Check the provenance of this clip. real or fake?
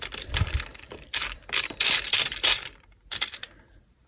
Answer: fake